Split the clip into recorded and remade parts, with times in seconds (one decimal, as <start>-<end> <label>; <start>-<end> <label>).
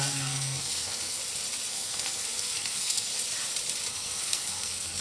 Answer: 0.0-1.2 remade; 1.2-1.7 recorded; 1.7-3.1 remade; 3.1-3.9 recorded; 3.9-5.0 remade